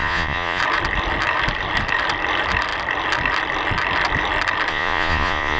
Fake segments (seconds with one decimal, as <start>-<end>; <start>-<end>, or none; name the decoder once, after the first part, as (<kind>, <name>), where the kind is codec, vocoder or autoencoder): 0.0-0.6 (vocoder, Vocos); 4.7-5.6